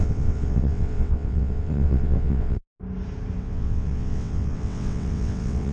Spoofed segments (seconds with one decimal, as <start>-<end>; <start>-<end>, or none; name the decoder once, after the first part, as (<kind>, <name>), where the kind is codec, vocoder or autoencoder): 0.0-2.6 (vocoder, WaveNeXt); 3.4-5.7